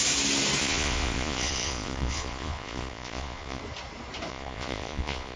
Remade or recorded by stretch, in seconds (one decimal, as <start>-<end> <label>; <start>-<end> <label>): 0.0-0.6 recorded; 0.6-3.6 remade; 3.6-4.3 recorded; 4.3-5.4 remade